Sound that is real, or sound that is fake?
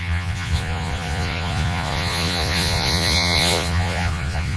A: fake